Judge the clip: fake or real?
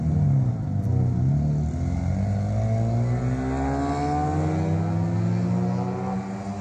real